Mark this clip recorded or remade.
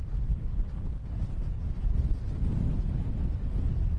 recorded